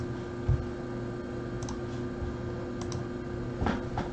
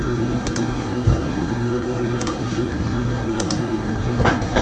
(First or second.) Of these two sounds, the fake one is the second